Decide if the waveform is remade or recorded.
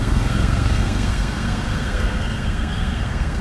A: remade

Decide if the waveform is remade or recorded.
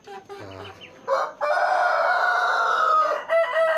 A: recorded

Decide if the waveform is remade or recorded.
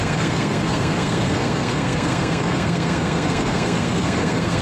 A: remade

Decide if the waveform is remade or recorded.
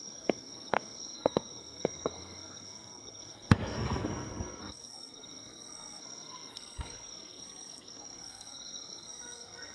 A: remade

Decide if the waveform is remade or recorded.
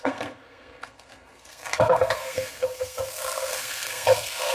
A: remade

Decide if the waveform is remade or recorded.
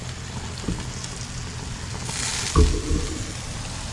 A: recorded